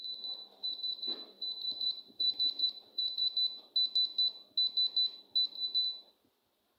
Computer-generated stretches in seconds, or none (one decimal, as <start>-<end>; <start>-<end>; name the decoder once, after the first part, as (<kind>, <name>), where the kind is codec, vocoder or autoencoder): 0.6-3.3 (vocoder, BigVGAN v2)